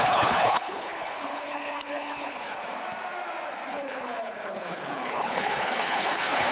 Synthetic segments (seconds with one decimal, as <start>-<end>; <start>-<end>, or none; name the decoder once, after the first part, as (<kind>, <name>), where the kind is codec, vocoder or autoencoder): 0.0-2.6 (codec, HILCodec); 3.7-6.5